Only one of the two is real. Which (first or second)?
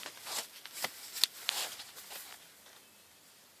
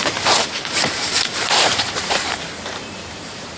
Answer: first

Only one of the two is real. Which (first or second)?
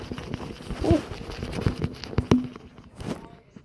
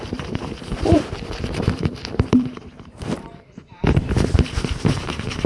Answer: first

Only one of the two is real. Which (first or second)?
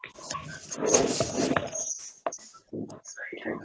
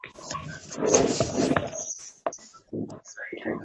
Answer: second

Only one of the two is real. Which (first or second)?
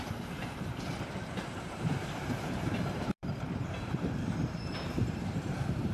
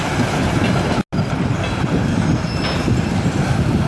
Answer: second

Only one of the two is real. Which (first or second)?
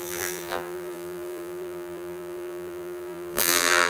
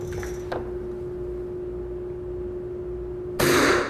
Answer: second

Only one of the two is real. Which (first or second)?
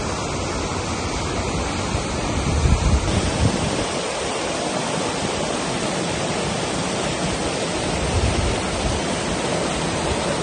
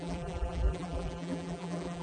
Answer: first